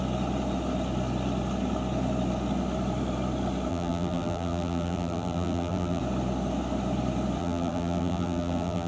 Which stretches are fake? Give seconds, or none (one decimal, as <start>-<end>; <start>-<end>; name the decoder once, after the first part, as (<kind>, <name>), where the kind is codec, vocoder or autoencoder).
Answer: 3.7-6.0 (vocoder, BigVGAN v2); 7.4-8.9